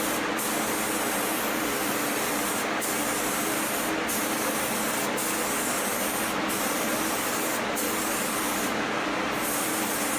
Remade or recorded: recorded